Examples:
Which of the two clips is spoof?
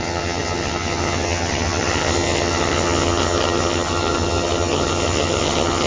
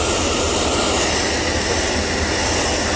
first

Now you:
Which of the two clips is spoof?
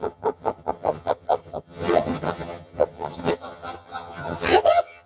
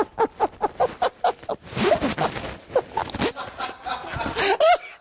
first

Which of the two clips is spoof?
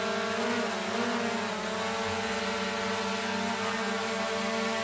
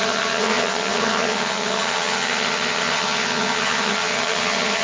second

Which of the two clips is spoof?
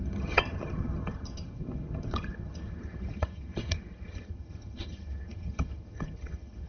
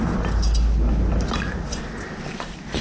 first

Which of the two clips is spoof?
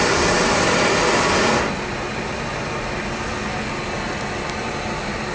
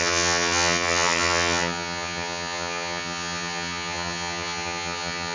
second